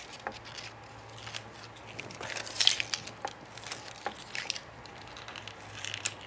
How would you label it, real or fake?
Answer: real